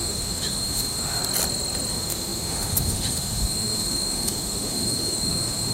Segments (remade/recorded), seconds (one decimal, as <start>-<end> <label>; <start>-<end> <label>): 0.0-1.2 remade; 1.2-1.9 recorded; 1.9-5.7 remade